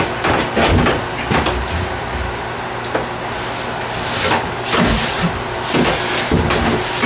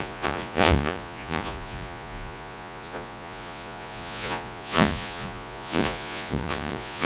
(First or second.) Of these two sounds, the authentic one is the first